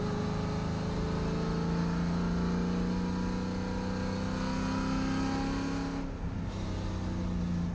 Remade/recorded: recorded